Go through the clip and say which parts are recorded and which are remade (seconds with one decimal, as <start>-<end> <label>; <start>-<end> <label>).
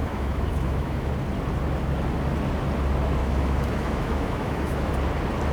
0.0-1.1 remade; 1.1-3.2 recorded; 3.2-4.9 remade; 4.9-5.5 recorded